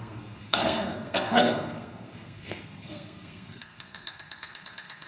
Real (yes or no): no